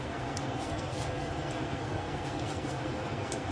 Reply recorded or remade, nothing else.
remade